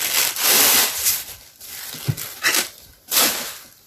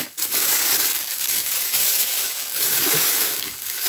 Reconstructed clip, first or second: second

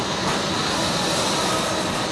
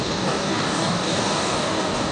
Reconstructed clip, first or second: second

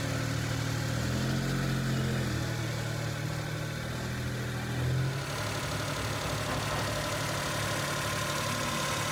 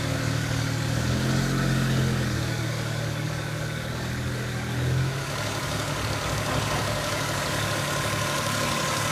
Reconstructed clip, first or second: second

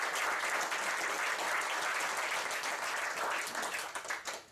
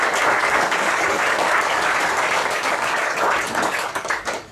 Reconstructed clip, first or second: second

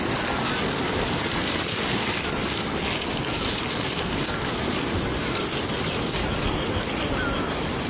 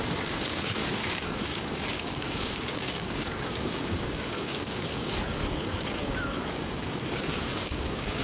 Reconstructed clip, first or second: second